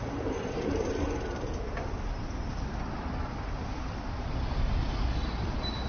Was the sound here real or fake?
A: real